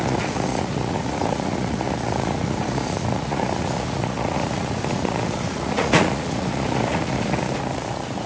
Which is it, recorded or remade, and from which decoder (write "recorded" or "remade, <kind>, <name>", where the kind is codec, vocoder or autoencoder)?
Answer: remade, vocoder, Vocos